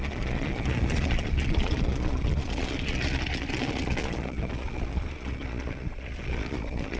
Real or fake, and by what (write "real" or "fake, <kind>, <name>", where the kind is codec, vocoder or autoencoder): fake, vocoder, Vocos